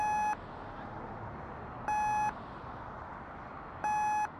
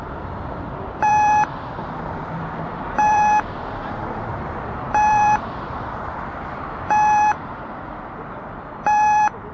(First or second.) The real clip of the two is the first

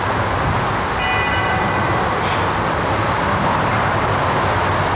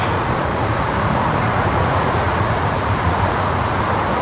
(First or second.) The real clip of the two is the first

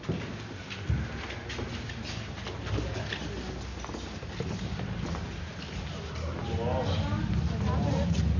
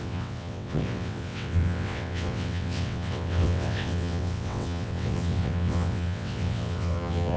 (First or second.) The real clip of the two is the first